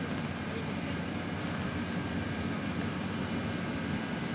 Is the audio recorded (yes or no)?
yes